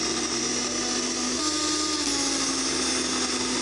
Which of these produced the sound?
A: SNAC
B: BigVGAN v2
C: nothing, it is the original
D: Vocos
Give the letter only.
C